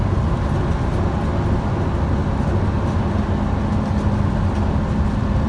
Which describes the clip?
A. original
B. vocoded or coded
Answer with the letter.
A